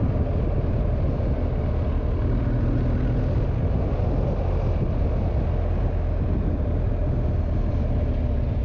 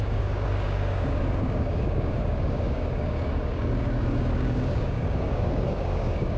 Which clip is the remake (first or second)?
second